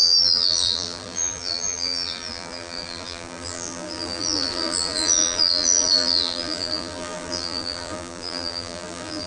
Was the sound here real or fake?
fake